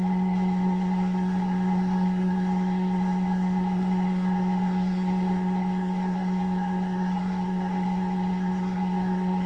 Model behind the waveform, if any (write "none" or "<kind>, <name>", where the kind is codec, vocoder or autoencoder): codec, SNAC